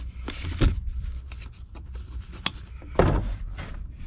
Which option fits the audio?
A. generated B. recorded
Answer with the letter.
B